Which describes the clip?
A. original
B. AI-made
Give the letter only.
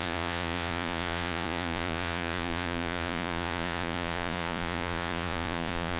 B